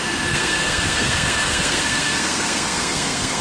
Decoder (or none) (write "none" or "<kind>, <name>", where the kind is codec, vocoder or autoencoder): codec, SNAC